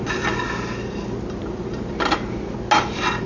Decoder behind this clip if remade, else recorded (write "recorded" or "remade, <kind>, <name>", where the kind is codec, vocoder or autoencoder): recorded